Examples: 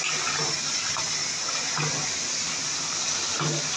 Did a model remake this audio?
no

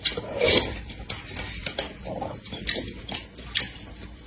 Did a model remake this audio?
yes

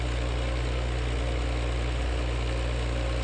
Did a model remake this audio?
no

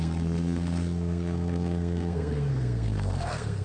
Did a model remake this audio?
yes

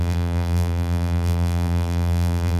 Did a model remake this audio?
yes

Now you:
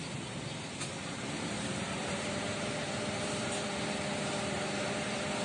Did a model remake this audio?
yes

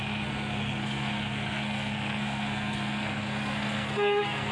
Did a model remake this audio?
yes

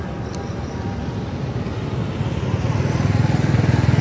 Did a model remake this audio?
no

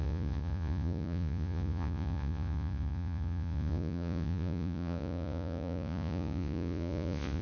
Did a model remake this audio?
yes